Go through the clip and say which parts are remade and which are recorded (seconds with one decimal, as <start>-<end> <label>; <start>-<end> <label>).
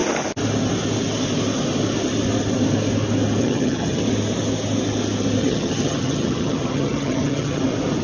0.0-3.4 recorded; 3.4-4.0 remade; 4.0-5.4 recorded; 5.4-7.6 remade; 7.6-8.0 recorded